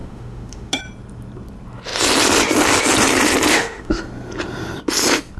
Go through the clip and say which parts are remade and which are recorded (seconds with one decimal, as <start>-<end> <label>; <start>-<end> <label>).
0.0-0.8 remade; 0.8-3.5 recorded; 3.5-4.0 remade; 4.0-5.4 recorded